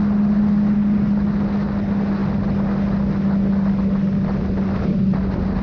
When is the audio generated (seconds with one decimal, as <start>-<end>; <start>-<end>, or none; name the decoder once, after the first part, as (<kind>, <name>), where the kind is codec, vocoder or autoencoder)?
none